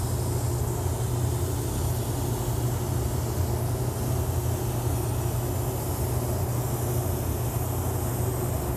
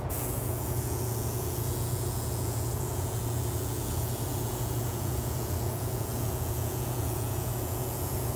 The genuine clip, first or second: first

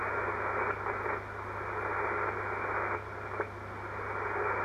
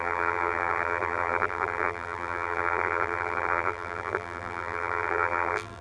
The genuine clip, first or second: first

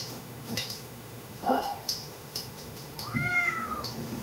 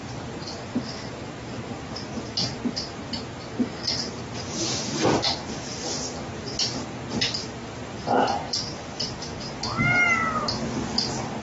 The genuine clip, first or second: second